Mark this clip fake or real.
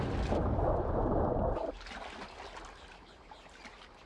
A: real